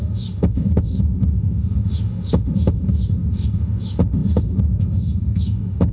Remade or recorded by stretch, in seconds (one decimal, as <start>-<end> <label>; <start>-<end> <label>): 0.0-5.9 remade